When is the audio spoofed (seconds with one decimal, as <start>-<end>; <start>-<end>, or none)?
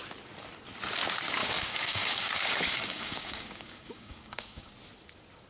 1.4-4.7